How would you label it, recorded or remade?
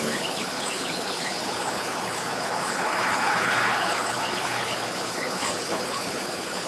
remade